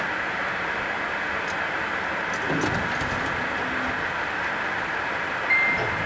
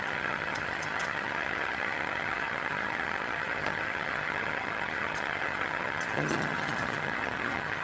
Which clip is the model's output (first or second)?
second